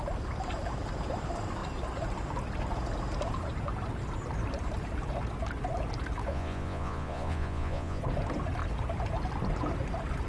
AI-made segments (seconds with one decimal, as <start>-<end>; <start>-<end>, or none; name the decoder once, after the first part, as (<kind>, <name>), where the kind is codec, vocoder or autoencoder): 6.3-8.0 (vocoder, Vocos)